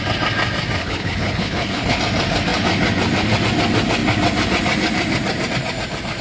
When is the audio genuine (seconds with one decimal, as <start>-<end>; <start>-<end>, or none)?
0.0-0.8; 2.0-6.2